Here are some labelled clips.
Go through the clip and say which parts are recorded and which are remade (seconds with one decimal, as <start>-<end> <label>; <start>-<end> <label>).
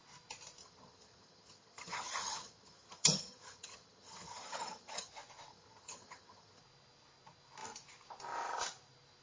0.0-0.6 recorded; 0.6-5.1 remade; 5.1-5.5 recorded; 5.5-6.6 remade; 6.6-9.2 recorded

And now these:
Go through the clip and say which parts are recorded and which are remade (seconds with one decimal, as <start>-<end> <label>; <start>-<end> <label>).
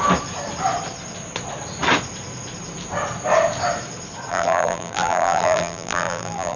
0.0-4.3 recorded; 4.3-6.6 remade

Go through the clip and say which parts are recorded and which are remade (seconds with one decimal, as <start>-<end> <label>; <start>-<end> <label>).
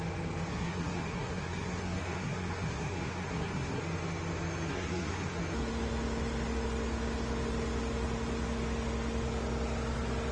0.0-0.5 recorded; 0.5-3.8 remade; 3.8-4.7 recorded; 4.7-5.4 remade; 5.4-10.3 recorded